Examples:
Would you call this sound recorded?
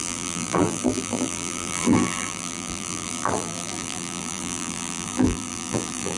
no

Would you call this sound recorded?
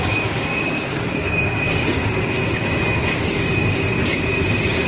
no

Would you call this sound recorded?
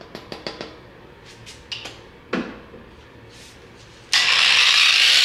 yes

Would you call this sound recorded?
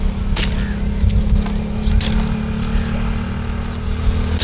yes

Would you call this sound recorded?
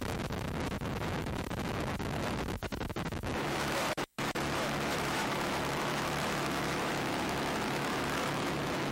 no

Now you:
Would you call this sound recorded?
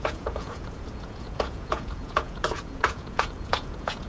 no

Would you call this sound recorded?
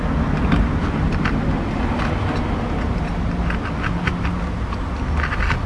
yes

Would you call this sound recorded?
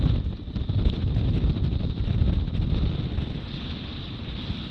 yes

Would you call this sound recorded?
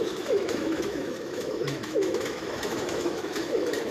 no